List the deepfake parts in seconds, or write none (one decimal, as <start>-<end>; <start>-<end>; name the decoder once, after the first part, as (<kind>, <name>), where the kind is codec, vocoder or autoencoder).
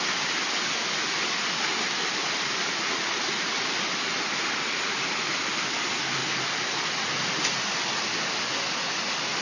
none